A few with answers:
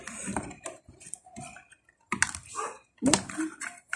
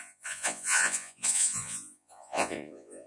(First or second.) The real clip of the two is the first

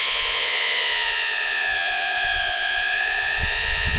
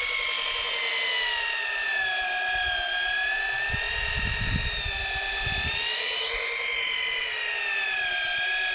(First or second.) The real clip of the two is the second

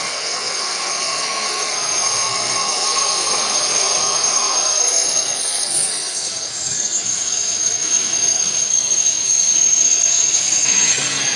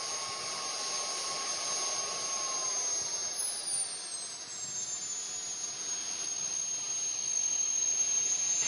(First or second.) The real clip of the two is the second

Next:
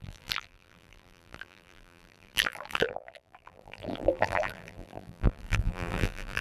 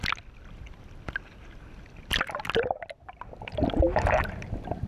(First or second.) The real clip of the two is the second